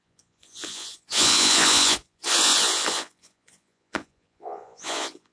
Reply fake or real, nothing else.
fake